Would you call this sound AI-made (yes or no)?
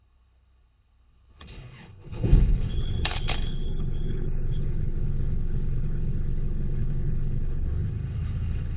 yes